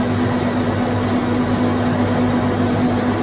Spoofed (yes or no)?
no